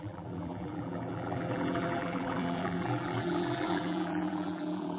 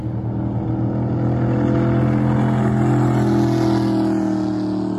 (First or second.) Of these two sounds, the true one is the second